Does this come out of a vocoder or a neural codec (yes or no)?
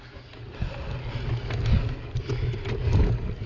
no